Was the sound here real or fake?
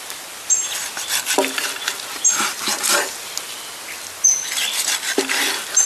real